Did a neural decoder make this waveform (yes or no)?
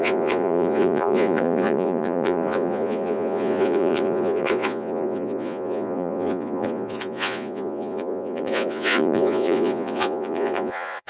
yes